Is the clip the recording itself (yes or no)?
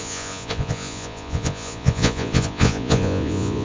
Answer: no